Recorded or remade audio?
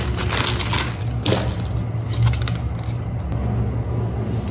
recorded